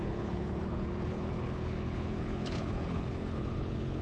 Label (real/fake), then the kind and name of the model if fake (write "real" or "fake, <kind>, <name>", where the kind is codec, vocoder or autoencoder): fake, codec, HILCodec